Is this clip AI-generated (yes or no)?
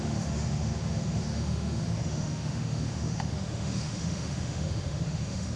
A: yes